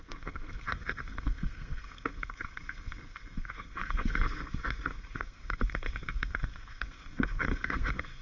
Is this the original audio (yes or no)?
no